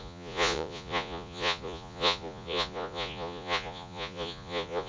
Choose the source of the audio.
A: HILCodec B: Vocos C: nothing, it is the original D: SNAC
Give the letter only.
B